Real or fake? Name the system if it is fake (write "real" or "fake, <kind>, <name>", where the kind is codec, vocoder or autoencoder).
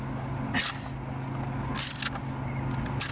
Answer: real